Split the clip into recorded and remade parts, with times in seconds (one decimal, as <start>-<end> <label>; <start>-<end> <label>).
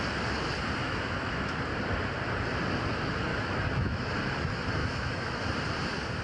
0.0-0.8 recorded; 0.8-1.6 remade; 1.6-3.3 recorded; 3.3-4.1 remade; 4.1-4.8 recorded; 4.8-5.4 remade; 5.4-6.2 recorded